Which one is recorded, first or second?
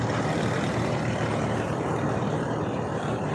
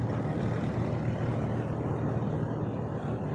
second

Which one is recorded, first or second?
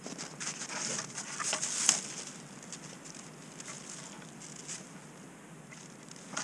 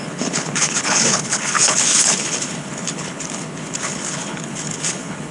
first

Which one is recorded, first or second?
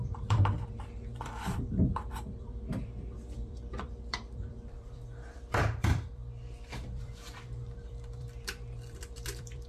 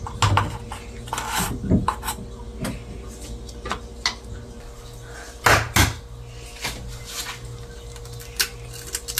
second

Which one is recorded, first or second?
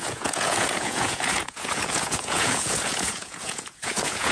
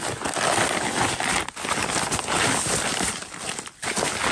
second